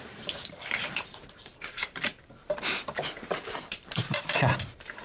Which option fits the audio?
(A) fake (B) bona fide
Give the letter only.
A